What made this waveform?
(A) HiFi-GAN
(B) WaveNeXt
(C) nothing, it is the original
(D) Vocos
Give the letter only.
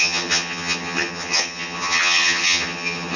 A